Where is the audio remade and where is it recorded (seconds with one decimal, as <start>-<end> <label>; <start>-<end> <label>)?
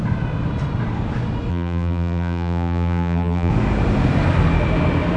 0.0-1.5 recorded; 1.5-3.5 remade; 3.5-5.2 recorded